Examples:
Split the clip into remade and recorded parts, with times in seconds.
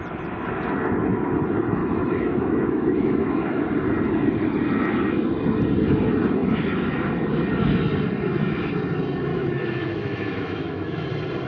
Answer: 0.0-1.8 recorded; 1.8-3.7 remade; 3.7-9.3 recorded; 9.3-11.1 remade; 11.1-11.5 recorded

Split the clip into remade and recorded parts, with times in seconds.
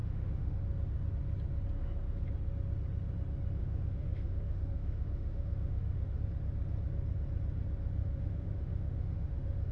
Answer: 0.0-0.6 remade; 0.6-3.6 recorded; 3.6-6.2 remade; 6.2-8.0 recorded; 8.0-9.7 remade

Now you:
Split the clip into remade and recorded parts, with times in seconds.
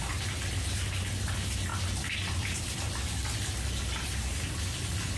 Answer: 0.0-5.2 recorded